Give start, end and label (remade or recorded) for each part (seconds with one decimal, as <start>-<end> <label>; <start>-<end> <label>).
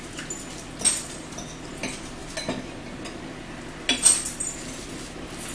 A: 0.0-5.5 recorded